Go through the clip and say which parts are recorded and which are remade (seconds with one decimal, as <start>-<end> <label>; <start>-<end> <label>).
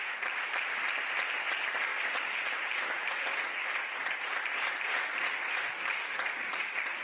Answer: 0.0-7.0 recorded